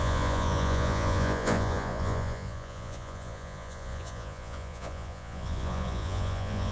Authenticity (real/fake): fake